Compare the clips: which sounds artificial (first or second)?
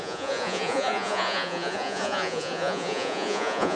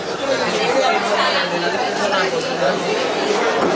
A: first